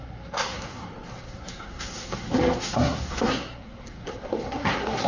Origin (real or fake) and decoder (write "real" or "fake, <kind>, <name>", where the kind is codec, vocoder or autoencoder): fake, codec, SNAC